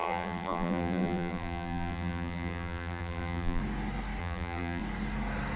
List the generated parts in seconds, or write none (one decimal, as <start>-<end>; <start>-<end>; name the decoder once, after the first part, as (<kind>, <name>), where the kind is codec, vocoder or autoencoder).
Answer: 0.0-3.6 (vocoder, BigVGAN v2); 4.2-4.8